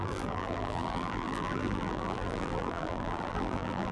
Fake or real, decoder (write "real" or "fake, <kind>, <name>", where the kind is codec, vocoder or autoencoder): fake, vocoder, BigVGAN v2